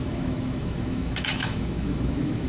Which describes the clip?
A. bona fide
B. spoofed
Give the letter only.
B